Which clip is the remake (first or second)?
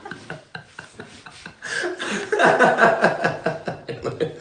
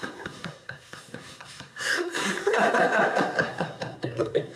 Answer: second